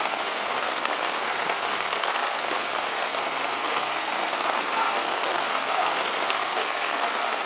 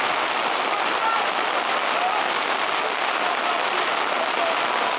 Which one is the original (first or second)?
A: second